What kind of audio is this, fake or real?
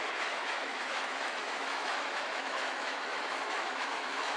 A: fake